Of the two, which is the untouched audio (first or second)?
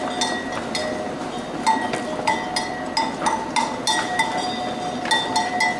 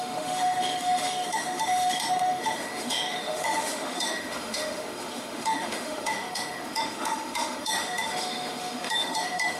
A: first